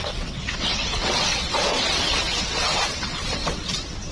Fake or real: fake